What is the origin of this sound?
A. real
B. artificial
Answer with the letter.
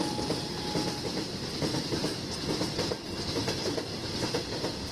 A